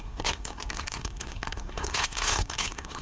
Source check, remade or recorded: remade